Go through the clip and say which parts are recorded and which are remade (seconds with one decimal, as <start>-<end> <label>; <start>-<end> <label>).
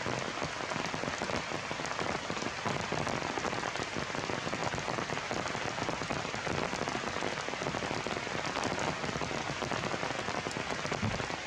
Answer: 0.0-11.5 recorded